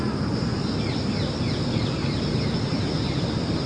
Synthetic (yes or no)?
no